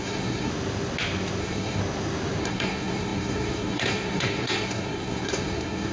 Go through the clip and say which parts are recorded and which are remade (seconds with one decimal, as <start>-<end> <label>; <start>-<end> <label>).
0.0-0.5 remade; 0.5-1.4 recorded; 1.4-1.8 remade; 1.8-2.4 recorded; 2.4-5.9 remade